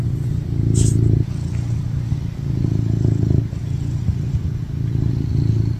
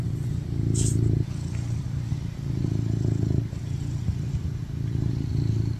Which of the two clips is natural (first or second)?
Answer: first